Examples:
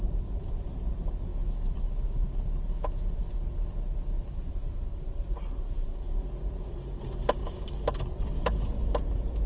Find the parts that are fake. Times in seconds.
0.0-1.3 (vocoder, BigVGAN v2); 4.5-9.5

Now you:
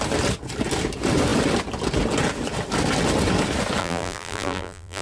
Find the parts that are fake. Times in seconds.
3.8-5.0 (vocoder, BigVGAN v2)

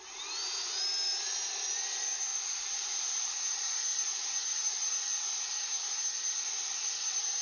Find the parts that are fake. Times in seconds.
2.3-4.7 (vocoder, BigVGAN v2)

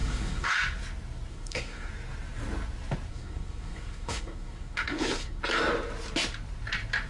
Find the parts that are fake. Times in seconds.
0.0-0.5 (codec, SNAC); 1.3-1.9; 3.1-5.4